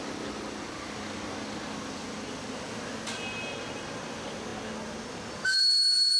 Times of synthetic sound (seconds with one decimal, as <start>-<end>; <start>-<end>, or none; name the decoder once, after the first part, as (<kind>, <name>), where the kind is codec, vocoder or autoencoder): none